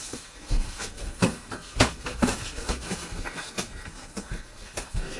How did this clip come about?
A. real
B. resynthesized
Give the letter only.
B